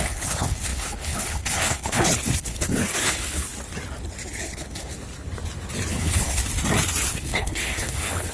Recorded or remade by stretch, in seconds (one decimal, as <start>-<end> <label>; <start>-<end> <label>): 0.0-3.5 remade; 3.5-4.3 recorded; 4.3-4.9 remade; 4.9-5.9 recorded; 5.9-6.4 remade; 6.4-7.1 recorded; 7.1-8.3 remade